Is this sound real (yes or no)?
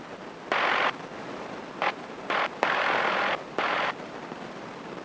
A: yes